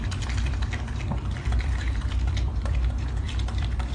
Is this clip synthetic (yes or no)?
yes